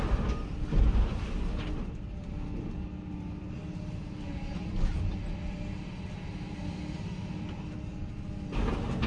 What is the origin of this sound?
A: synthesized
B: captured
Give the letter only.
B